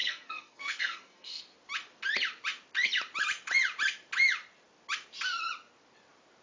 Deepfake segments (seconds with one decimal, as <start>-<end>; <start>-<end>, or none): 0.0-1.4